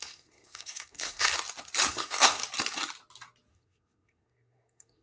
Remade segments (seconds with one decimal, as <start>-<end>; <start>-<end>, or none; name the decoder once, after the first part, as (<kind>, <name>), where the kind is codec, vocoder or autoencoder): 0.0-1.3 (codec, SNAC); 1.9-2.4; 3.5-5.0